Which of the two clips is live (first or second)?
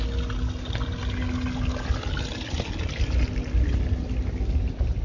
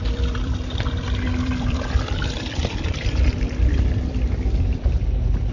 first